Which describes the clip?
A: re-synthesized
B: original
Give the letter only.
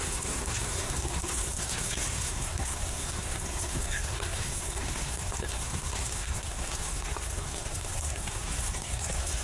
A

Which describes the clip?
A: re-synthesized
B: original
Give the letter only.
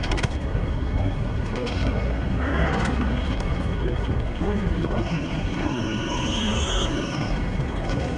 A